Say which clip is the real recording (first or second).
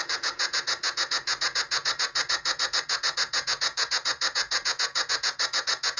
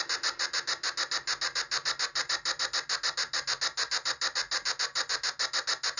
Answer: second